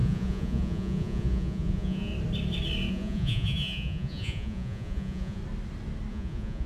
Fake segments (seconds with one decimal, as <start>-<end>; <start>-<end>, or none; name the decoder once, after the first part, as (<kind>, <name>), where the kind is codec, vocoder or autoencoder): 0.0-2.1 (vocoder, Vocos); 2.9-5.4; 6.1-6.7